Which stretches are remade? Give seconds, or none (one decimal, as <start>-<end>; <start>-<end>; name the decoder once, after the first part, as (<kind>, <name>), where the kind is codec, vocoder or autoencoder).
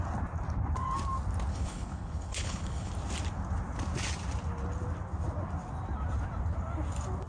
1.5-2.9 (codec, HILCodec)